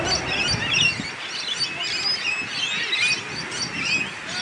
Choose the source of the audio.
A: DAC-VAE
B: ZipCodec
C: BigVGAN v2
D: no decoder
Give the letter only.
D